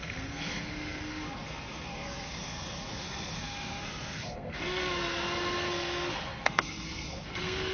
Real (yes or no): no